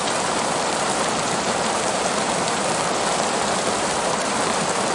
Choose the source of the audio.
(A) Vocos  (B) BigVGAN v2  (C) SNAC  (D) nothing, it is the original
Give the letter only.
B